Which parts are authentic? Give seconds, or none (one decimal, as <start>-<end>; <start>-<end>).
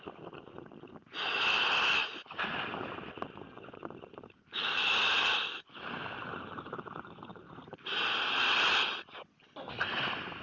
0.0-10.4